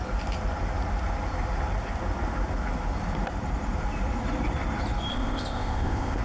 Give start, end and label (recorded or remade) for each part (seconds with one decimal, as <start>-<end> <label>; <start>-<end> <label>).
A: 0.0-5.1 recorded; 5.1-6.2 remade